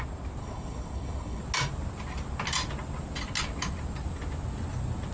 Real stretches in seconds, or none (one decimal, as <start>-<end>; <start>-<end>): 0.0-0.4; 1.4-5.1

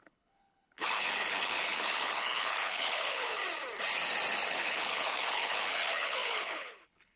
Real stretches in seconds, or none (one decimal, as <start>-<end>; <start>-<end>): 3.4-4.5

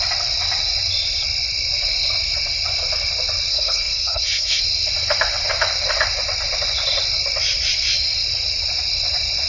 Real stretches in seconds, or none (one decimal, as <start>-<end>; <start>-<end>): 0.0-3.5; 4.6-9.5

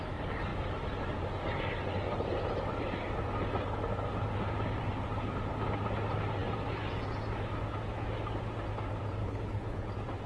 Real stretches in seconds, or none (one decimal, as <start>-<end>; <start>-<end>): 0.0-9.2; 9.9-10.3